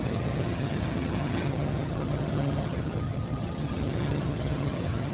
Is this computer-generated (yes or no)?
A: yes